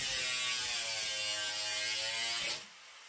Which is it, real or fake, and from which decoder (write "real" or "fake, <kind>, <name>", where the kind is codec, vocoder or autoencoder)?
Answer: real